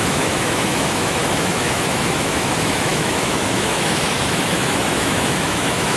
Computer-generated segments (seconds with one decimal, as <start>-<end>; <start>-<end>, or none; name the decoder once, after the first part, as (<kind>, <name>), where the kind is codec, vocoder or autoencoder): 0.0-6.0 (autoencoder, DAC-VAE)